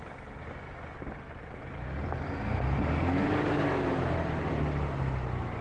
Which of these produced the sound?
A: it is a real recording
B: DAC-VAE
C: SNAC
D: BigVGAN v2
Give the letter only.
A